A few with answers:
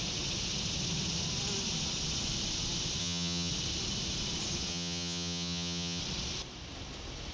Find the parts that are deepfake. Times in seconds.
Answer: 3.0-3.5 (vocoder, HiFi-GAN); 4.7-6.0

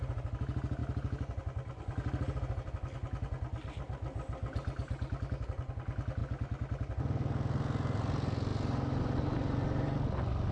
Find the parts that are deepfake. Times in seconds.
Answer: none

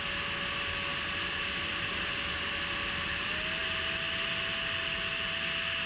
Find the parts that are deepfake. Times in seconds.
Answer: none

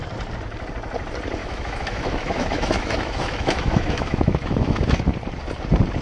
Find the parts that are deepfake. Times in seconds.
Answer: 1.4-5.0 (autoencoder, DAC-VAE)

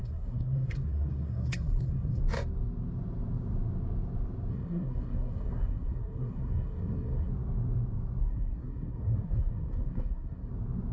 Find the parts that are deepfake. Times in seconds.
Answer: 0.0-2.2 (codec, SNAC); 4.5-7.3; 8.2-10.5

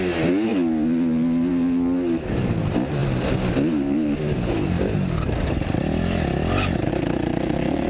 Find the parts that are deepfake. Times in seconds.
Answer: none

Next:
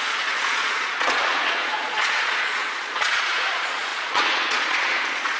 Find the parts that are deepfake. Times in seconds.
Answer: 0.0-5.4 (vocoder, Vocos)